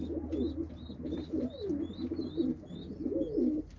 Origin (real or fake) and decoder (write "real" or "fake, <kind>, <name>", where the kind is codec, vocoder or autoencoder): real